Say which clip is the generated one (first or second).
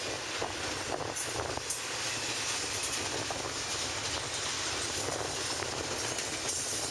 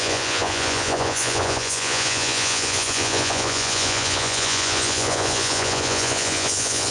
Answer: second